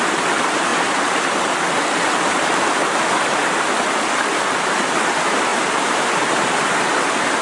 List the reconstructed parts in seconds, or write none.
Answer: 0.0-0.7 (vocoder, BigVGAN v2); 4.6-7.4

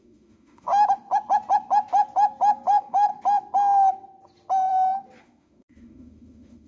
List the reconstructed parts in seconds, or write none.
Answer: 0.0-0.7 (autoencoder, DAC-VAE); 2.7-3.1; 5.2-6.7

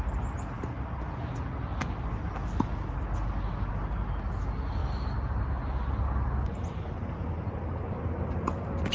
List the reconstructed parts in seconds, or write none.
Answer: none

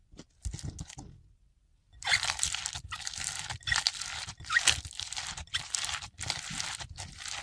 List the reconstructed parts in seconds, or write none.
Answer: none

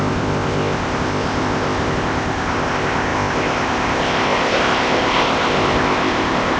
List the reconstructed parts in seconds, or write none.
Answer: 0.0-6.6 (codec, ZipCodec)

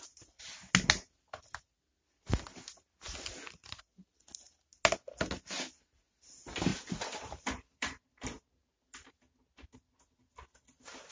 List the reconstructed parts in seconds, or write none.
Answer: 6.7-8.0 (vocoder, BigVGAN v2)